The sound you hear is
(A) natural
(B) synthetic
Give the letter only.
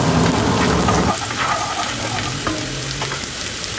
A